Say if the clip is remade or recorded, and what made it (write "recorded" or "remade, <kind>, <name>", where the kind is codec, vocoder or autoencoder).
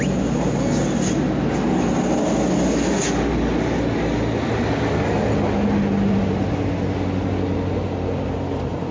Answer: recorded